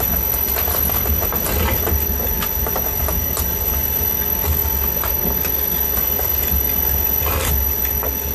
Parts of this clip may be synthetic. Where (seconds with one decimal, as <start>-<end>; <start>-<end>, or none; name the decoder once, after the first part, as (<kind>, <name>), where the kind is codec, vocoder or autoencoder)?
3.5-4.1 (vocoder, BigVGAN v2)